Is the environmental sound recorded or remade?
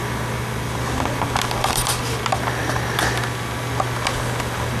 recorded